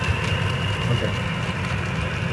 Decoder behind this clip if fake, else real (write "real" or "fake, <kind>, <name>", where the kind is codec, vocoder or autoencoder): real